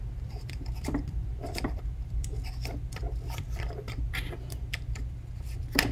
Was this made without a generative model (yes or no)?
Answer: no